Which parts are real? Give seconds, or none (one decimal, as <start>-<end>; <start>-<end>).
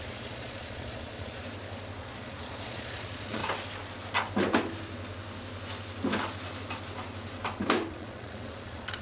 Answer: 1.4-2.0; 3.4-7.9